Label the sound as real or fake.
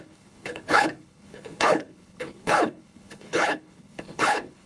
fake